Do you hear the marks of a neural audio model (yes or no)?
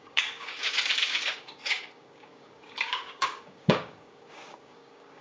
yes